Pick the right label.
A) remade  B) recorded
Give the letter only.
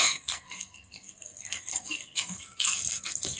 A